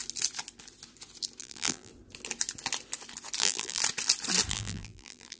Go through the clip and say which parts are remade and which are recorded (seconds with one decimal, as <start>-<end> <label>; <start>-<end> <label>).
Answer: 0.0-1.4 recorded; 1.4-1.9 remade; 1.9-3.4 recorded; 3.4-3.8 remade; 3.8-4.5 recorded; 4.5-5.4 remade